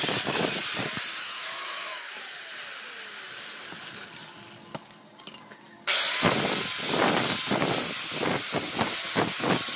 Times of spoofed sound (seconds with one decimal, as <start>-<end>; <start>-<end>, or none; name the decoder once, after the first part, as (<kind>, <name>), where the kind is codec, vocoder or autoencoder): 1.2-2.2 (autoencoder, DAC-VAE)